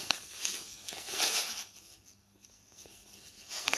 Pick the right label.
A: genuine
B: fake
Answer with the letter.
B